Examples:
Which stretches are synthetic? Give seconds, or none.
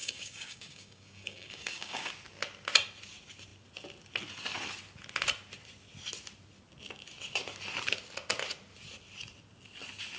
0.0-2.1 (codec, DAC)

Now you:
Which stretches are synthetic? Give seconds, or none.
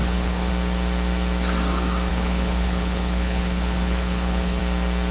0.0-0.5 (codec, HILCodec); 2.1-4.6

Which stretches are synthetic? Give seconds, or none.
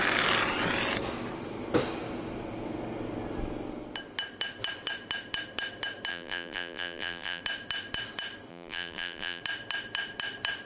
6.1-7.4 (vocoder, BigVGAN v2); 8.5-9.4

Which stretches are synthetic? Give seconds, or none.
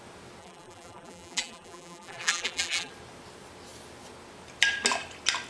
0.4-2.9 (vocoder, BigVGAN v2)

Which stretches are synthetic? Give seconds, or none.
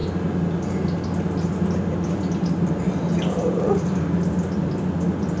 none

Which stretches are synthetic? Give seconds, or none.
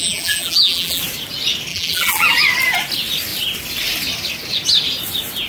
0.0-1.0 (vocoder, BigVGAN v2); 1.7-2.3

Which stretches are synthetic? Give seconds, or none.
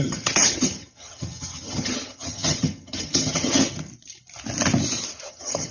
0.0-3.9 (vocoder, HiFi-GAN); 5.3-5.7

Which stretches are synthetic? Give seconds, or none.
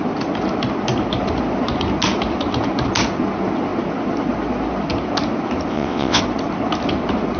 5.7-6.2 (vocoder, WaveNeXt)